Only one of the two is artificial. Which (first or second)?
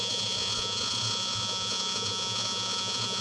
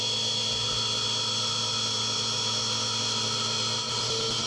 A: first